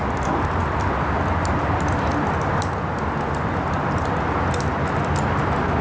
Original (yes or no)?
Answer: yes